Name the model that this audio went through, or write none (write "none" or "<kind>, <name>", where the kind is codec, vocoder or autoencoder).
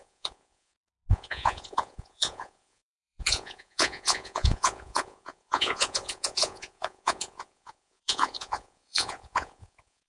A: vocoder, Vocos